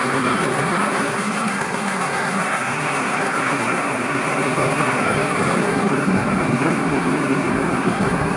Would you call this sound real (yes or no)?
no